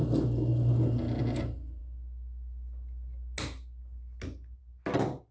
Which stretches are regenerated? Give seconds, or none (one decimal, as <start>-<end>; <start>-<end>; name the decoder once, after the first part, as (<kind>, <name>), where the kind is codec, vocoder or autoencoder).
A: none